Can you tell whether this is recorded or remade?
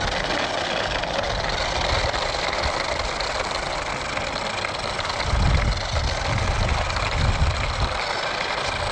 recorded